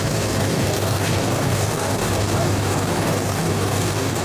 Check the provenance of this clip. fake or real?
fake